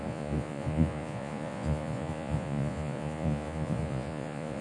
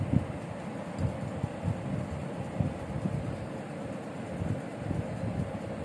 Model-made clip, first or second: first